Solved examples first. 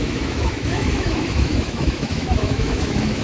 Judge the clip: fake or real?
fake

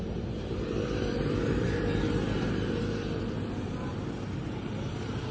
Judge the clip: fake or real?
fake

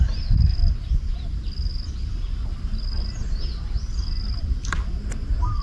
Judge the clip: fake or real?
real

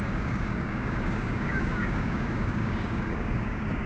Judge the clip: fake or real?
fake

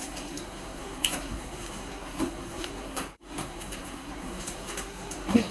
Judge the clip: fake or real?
fake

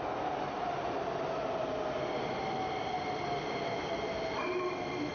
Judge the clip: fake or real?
real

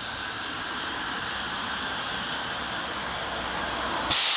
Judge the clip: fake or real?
real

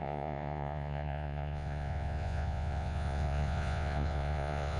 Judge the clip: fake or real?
fake